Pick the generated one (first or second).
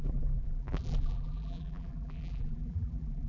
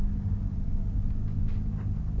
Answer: first